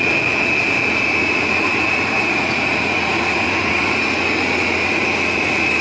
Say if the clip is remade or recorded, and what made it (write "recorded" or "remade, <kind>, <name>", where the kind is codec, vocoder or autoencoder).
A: remade, vocoder, Vocos